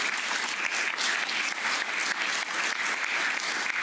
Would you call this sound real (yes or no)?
yes